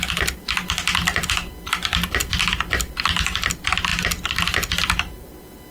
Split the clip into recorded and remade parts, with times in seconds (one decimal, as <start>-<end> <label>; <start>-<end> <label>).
0.0-5.7 recorded